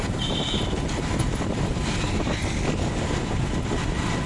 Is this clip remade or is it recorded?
recorded